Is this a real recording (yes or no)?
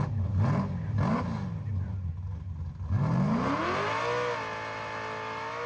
yes